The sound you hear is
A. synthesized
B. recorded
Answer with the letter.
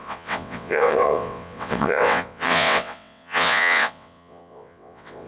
A